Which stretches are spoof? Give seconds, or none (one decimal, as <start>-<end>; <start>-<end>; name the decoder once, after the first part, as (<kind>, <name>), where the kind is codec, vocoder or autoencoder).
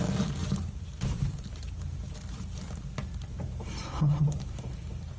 0.4-2.2 (vocoder, BigVGAN v2); 3.0-4.6